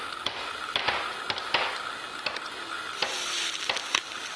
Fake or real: real